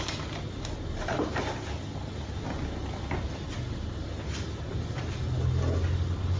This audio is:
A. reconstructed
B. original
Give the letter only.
B